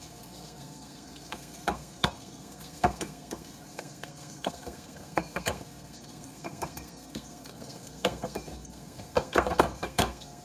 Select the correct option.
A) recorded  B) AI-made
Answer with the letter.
B